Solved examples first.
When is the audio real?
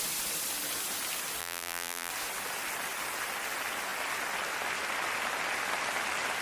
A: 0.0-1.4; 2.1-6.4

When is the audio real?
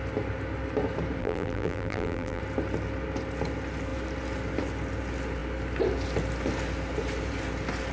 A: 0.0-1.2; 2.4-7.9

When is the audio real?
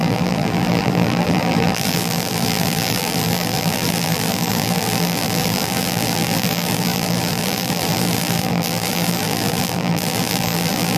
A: none